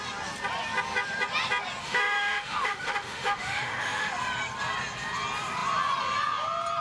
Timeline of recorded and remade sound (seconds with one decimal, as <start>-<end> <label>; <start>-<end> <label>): 0.0-1.8 recorded; 1.8-4.1 remade; 4.1-6.8 recorded

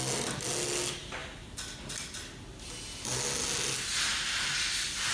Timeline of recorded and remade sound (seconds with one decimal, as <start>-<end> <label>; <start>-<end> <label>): 0.0-5.1 recorded